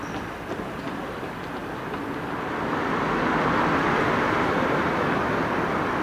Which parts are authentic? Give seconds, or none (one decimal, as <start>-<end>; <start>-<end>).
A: 0.0-6.0